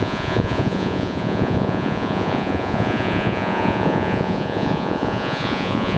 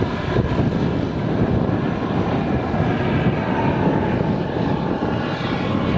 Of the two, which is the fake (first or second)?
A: first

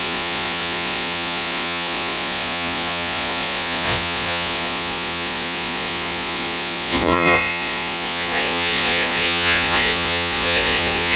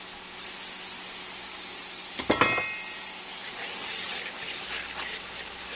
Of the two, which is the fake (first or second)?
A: first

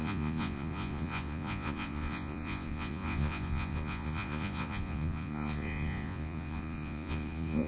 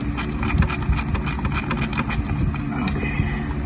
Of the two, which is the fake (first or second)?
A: first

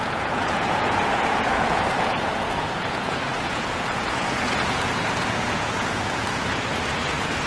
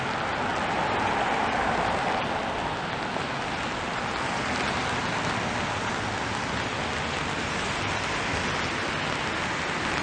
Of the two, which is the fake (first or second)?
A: first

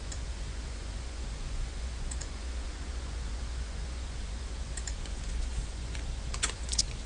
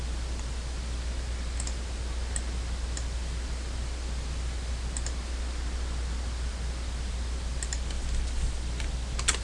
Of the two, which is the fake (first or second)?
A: first